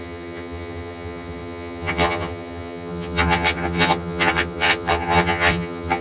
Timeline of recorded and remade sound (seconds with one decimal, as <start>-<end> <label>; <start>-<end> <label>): 0.0-6.0 remade

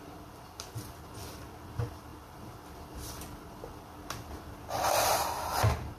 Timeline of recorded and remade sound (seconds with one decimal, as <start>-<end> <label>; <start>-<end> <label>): 0.0-6.0 recorded

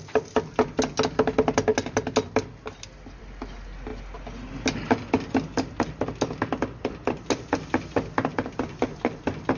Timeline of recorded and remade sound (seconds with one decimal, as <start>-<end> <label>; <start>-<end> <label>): 0.0-9.6 recorded

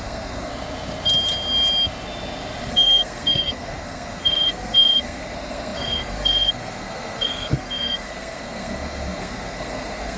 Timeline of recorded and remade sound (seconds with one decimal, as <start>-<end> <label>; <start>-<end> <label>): 0.0-0.5 remade; 0.5-2.7 recorded; 2.7-10.2 remade

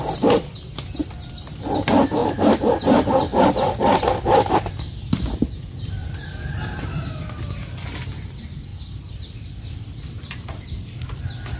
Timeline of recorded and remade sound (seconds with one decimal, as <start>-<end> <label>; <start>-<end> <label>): 0.0-1.0 recorded; 1.0-1.6 remade; 1.6-8.7 recorded; 8.7-11.6 remade

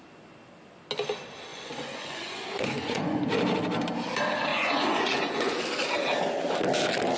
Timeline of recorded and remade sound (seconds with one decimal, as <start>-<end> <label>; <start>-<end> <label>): 0.0-1.5 recorded; 1.5-3.2 remade; 3.2-4.5 recorded; 4.5-5.6 remade; 5.6-7.2 recorded

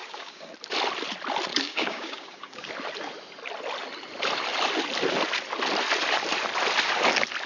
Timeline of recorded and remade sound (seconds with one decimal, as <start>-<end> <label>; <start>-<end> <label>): 0.0-0.5 remade; 0.5-1.5 recorded; 1.5-2.7 remade; 2.7-7.5 recorded